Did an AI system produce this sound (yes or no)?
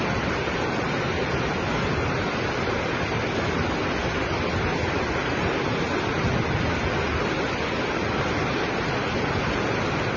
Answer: no